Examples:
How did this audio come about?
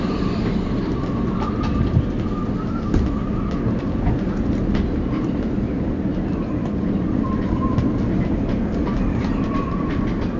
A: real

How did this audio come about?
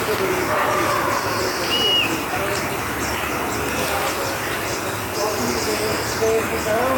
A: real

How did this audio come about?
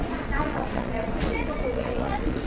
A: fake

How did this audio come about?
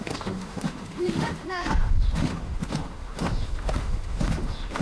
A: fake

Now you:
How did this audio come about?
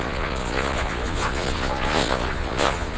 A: fake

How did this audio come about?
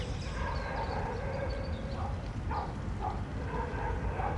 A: real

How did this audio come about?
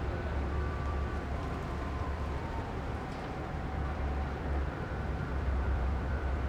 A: fake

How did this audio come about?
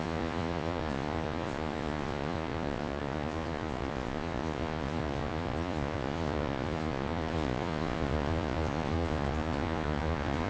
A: fake